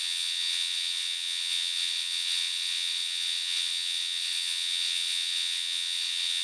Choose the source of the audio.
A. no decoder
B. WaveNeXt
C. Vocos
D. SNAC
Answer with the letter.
B